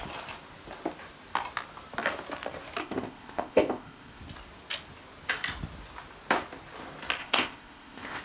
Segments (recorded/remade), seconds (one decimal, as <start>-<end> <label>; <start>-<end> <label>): 0.0-2.8 recorded; 2.8-4.2 remade; 4.2-7.2 recorded; 7.2-8.2 remade